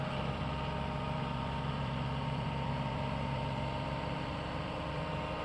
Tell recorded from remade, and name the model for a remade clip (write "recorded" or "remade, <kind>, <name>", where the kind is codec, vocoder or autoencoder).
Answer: remade, vocoder, BigVGAN v2